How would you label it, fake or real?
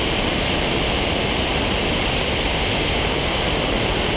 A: real